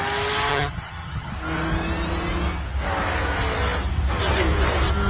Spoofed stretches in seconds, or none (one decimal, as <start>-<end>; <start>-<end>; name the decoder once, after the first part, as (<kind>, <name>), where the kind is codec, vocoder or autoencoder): 0.5-1.3 (vocoder, HiFi-GAN)

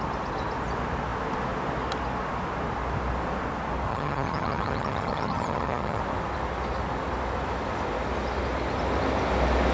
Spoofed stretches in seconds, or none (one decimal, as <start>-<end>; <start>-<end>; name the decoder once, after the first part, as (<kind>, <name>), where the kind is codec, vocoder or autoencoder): 3.9-6.0 (vocoder, HiFi-GAN)

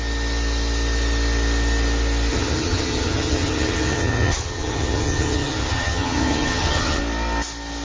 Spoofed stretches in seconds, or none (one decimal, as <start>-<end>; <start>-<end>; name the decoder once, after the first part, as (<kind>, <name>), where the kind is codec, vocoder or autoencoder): 2.3-7.0 (vocoder, HiFi-GAN)

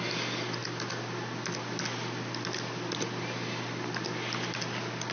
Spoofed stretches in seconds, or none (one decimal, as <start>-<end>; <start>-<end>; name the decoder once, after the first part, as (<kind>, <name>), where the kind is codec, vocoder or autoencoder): none

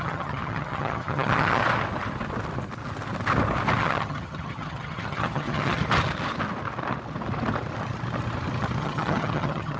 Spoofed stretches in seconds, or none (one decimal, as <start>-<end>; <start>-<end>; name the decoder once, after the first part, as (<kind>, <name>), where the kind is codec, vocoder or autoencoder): 0.0-1.6 (vocoder, HiFi-GAN); 3.8-5.8; 8.8-9.8

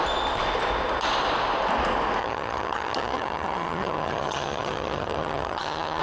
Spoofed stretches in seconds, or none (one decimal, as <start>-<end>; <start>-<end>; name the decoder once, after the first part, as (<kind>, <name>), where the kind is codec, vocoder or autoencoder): 2.2-6.0 (vocoder, HiFi-GAN)

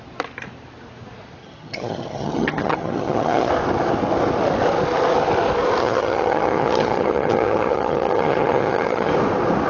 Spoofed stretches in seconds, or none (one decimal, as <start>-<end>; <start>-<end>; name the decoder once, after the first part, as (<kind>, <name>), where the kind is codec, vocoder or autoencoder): 1.4-3.5 (vocoder, HiFi-GAN); 5.8-9.1

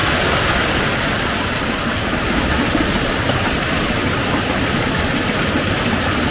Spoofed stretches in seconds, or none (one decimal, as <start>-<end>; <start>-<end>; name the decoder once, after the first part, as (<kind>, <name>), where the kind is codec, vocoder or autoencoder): none